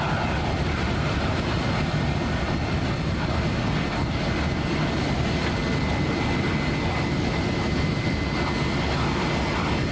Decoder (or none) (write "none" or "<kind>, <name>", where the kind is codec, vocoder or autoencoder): none